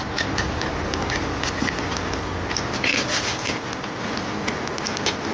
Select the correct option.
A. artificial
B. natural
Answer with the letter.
B